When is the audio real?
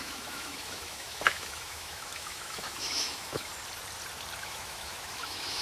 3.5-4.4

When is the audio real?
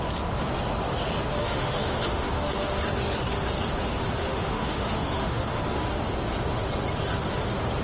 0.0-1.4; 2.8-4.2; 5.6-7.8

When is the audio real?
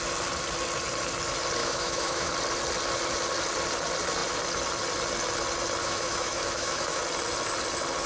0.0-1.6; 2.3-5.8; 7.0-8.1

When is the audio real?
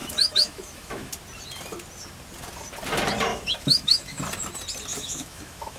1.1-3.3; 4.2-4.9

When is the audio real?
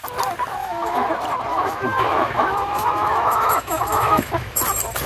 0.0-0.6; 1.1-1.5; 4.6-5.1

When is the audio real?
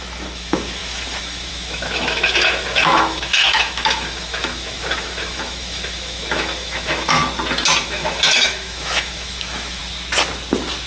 7.2-7.8; 9.8-10.9